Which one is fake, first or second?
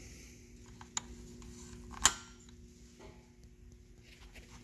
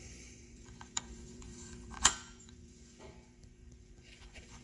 second